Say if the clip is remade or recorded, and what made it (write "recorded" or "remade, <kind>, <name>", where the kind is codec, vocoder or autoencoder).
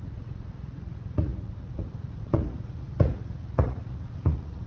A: remade, vocoder, Vocos